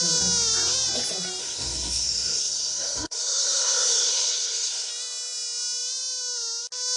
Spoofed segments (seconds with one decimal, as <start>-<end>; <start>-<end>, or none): 1.4-4.9